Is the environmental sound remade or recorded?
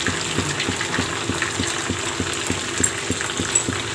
recorded